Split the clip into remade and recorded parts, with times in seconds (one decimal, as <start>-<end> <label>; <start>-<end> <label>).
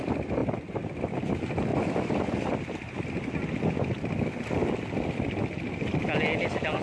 0.0-6.8 recorded